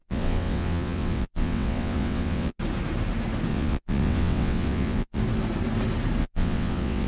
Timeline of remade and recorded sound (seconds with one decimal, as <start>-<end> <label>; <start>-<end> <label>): 0.0-2.6 remade; 2.6-3.5 recorded; 3.5-5.2 remade; 5.2-6.2 recorded; 6.2-7.1 remade